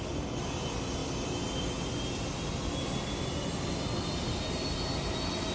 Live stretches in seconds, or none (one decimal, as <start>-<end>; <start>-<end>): 0.0-5.5